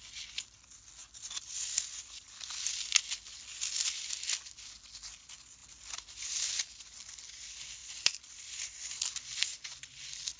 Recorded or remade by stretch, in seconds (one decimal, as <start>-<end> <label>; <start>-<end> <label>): 0.0-1.0 recorded; 1.0-2.3 remade; 2.3-7.8 recorded; 7.8-9.1 remade; 9.1-10.4 recorded